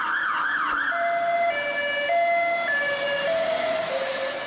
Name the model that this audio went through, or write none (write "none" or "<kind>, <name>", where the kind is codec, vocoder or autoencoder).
none